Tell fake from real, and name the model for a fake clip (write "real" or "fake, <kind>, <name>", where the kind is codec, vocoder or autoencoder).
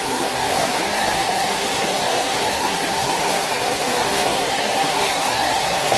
fake, codec, SNAC